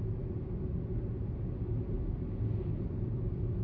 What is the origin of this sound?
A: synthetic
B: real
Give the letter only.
B